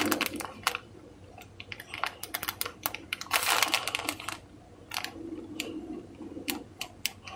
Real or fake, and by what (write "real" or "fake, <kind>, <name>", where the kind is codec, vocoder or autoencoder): real